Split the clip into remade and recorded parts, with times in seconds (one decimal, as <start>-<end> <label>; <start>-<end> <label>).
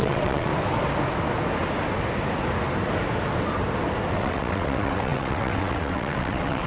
0.0-0.5 remade; 0.5-4.1 recorded; 4.1-6.7 remade